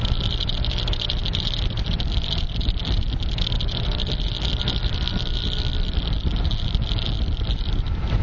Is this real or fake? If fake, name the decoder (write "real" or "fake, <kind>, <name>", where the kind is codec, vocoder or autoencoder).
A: real